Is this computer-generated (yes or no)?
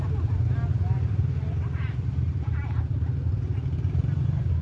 no